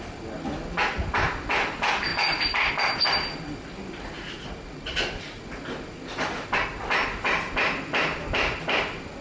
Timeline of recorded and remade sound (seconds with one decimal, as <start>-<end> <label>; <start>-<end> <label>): 0.0-2.1 recorded; 2.1-2.7 remade; 2.7-4.4 recorded; 4.4-5.2 remade; 5.2-9.2 recorded